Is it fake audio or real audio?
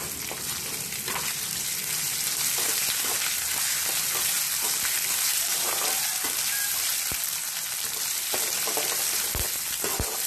real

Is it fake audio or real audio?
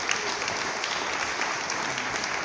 real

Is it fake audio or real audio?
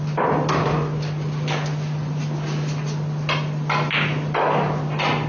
real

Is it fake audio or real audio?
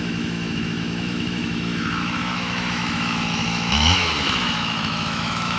fake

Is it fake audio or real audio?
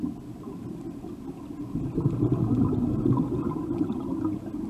real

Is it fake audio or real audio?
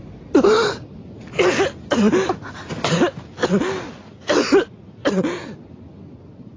real